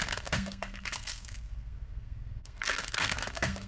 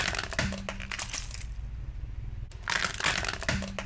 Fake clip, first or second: first